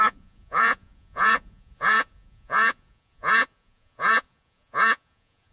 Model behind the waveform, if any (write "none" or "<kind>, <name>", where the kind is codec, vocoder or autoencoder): vocoder, Vocos